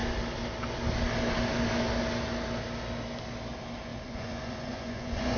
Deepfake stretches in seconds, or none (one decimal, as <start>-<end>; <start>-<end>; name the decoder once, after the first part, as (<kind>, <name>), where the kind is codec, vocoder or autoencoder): 3.9-5.4 (vocoder, Vocos)